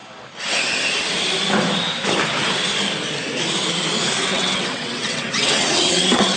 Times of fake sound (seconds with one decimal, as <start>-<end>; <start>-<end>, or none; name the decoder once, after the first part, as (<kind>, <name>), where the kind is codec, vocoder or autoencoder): 4.3-6.4 (vocoder, WaveNeXt)